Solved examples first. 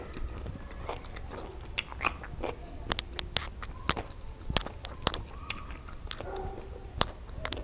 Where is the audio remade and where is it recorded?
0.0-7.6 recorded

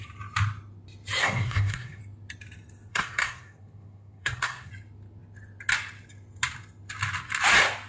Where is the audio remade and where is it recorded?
0.0-1.2 recorded; 1.2-2.0 remade; 2.0-2.9 recorded; 2.9-4.7 remade; 4.7-7.9 recorded

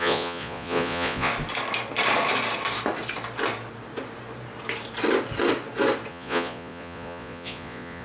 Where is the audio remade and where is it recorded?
0.0-1.3 remade; 1.3-6.1 recorded; 6.1-8.0 remade